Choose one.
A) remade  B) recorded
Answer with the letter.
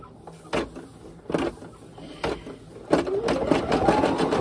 B